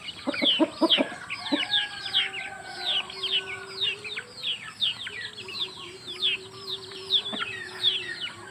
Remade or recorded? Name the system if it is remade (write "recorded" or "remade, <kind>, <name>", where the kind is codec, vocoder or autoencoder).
recorded